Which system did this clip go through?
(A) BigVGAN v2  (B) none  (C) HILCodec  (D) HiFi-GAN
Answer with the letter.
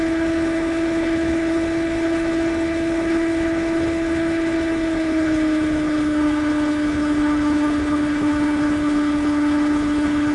C